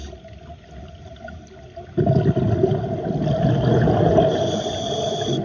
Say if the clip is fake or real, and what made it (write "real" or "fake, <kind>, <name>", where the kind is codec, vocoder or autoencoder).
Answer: real